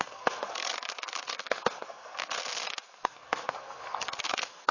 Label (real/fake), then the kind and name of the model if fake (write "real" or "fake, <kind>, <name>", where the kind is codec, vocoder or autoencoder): fake, codec, SNAC